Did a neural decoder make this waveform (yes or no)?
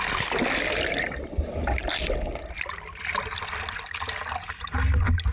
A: no